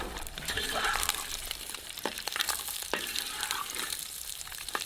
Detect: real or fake fake